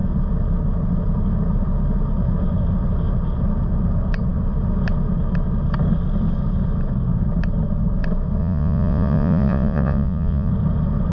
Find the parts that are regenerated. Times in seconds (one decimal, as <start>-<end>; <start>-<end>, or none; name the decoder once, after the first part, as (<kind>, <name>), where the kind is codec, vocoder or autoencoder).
8.4-10.5 (vocoder, Vocos)

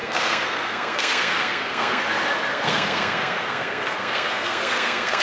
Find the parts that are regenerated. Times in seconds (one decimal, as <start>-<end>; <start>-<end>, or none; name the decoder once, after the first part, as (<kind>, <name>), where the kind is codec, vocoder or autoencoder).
0.0-2.0 (codec, SNAC); 2.5-5.2

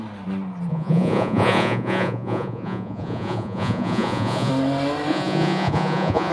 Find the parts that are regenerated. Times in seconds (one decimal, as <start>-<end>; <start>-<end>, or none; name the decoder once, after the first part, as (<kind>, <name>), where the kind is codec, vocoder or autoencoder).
0.7-4.5 (vocoder, Vocos); 5.1-6.3

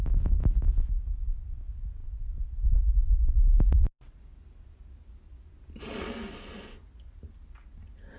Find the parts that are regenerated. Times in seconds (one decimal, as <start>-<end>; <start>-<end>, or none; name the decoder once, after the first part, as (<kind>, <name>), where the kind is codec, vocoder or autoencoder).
none

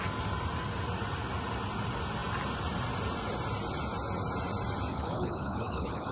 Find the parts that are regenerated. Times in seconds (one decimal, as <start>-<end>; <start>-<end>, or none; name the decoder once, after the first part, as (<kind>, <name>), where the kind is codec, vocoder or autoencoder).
4.9-6.1 (codec, HILCodec)

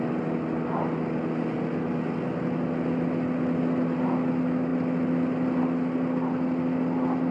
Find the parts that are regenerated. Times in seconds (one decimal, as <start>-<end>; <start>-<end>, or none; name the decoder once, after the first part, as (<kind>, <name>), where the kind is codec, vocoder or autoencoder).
none